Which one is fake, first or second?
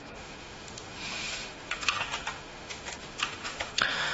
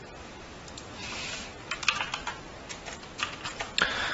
first